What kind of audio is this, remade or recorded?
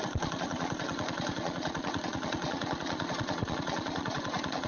remade